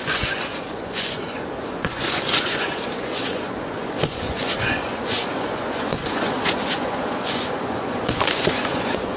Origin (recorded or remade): remade